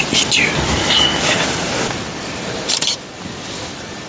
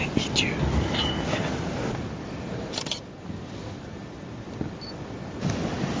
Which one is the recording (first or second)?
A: second